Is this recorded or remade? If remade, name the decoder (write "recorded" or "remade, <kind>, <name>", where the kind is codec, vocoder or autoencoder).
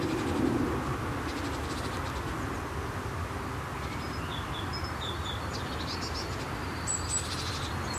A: recorded